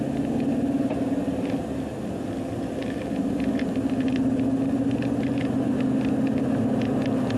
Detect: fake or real real